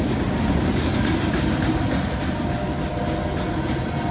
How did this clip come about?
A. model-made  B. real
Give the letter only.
B